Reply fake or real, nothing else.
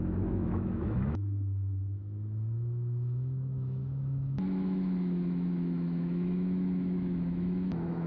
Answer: fake